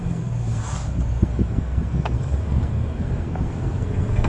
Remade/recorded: remade